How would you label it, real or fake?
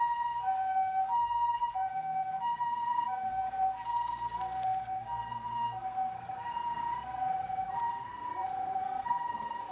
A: fake